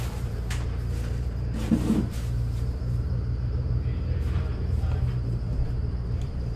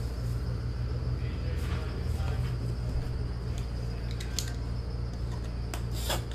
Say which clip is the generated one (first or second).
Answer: first